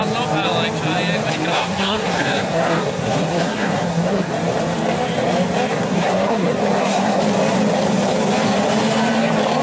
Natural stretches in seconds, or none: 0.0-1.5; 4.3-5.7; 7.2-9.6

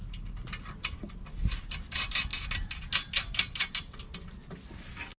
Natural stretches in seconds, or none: 0.0-5.2

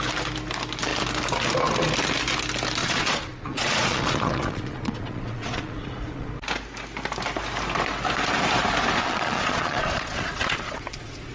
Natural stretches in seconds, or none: 0.0-2.8; 6.3-9.0

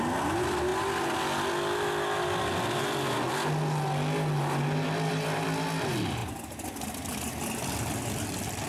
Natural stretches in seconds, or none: 0.0-8.7

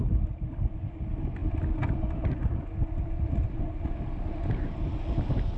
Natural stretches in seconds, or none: 0.0-5.6

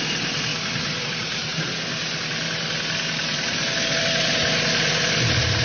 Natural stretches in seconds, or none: 0.5-1.1; 1.5-4.0